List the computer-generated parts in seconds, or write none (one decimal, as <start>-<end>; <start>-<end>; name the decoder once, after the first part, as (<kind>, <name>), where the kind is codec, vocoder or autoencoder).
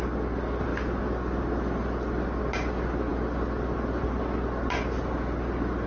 none